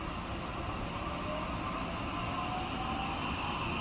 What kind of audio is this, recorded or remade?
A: recorded